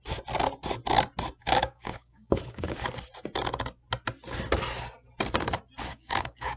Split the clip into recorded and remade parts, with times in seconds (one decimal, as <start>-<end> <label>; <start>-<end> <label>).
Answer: 0.0-1.4 recorded; 1.4-2.9 remade; 2.9-5.9 recorded; 5.9-6.6 remade